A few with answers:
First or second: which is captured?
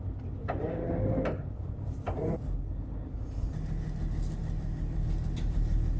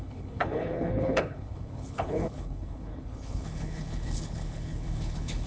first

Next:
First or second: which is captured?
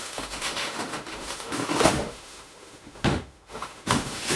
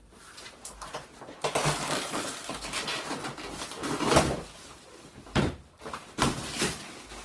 second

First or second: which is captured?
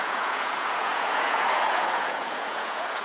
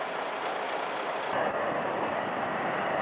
second